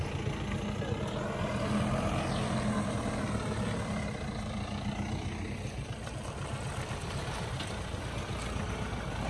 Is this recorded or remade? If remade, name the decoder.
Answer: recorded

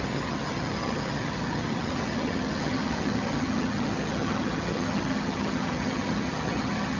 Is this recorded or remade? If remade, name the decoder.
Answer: remade, vocoder, HiFi-GAN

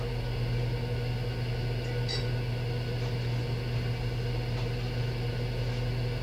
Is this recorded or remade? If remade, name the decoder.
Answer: recorded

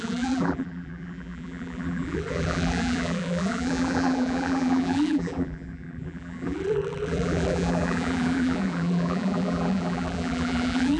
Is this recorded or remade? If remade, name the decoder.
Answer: remade, vocoder, BigVGAN v2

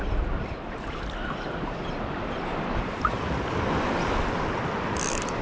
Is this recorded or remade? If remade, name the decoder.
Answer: recorded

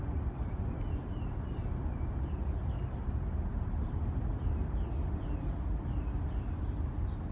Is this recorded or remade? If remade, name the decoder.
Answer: recorded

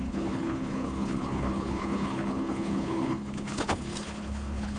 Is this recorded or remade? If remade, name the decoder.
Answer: remade, codec, HILCodec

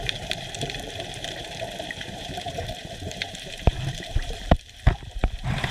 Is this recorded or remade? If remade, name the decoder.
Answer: remade, vocoder, BigVGAN v2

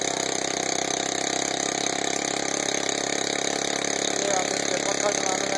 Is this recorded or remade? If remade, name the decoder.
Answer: recorded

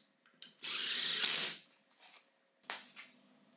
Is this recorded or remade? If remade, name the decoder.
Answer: recorded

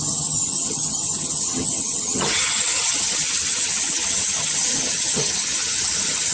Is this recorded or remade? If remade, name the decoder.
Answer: remade, vocoder, HiFi-GAN